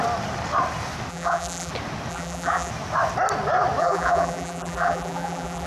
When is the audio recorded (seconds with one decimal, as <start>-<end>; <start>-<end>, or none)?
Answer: 0.0-1.1; 1.7-2.1; 2.7-3.8